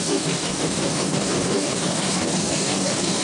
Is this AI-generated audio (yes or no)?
yes